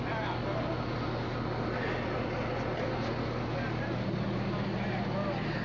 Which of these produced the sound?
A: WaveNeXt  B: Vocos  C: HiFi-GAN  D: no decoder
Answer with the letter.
D